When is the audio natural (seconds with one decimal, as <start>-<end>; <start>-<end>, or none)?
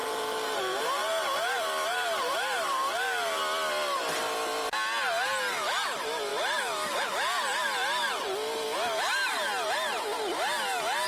3.4-11.1